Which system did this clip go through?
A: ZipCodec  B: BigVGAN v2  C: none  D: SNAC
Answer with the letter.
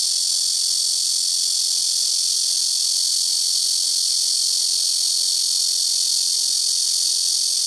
C